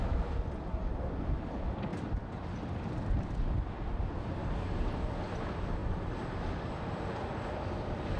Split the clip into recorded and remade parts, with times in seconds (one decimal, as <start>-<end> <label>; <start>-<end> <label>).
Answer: 0.0-8.2 recorded